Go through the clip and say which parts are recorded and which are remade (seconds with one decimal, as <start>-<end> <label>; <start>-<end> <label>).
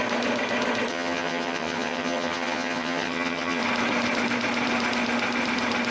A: 0.0-0.9 recorded; 0.9-3.6 remade; 3.6-5.9 recorded